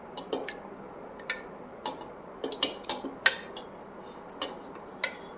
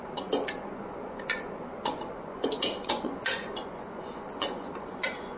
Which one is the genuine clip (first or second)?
first